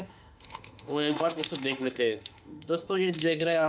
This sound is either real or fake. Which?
fake